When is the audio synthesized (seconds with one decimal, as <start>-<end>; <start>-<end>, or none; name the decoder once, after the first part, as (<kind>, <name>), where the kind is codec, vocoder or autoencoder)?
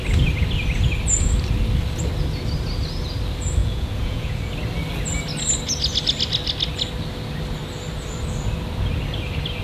3.6-4.5 (vocoder, Vocos)